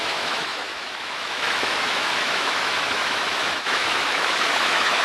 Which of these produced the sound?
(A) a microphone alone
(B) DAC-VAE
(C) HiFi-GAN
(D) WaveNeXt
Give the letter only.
B